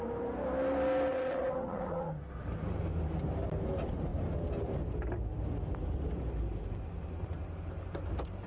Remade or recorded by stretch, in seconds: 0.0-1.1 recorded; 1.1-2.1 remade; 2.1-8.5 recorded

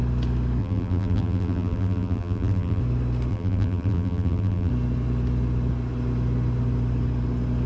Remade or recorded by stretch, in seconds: 0.0-0.6 recorded; 0.6-2.8 remade; 2.8-3.3 recorded; 3.3-4.7 remade; 4.7-7.7 recorded

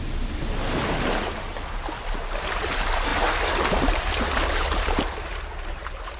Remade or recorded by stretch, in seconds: 0.0-6.2 recorded